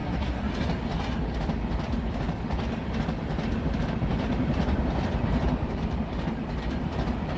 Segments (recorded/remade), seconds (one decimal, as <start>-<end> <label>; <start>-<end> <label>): 0.0-0.5 remade; 0.5-7.4 recorded